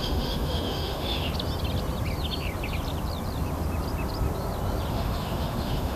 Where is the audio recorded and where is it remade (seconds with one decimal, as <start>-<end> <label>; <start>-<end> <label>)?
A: 0.0-1.3 remade; 1.3-4.9 recorded; 4.9-6.0 remade